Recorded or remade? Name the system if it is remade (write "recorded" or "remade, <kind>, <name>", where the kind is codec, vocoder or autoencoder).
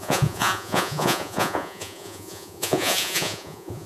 remade, vocoder, Vocos